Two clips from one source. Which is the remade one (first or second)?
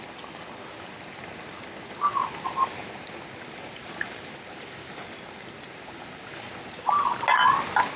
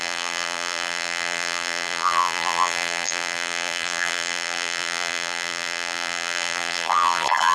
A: second